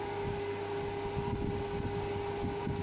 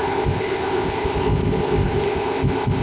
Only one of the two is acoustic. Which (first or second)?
first